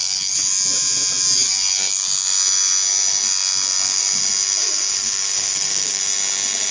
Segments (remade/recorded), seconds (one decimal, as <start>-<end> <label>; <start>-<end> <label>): 0.0-4.6 recorded; 4.6-6.0 remade; 6.0-6.7 recorded